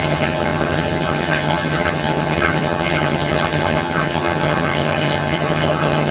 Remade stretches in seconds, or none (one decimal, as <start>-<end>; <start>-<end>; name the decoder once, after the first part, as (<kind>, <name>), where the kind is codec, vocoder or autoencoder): 0.0-6.1 (vocoder, HiFi-GAN)